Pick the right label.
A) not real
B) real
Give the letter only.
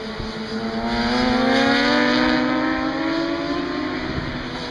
B